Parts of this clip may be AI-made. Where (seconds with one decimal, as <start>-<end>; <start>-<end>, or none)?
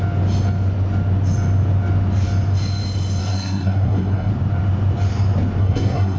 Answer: 3.2-4.3; 5.6-6.2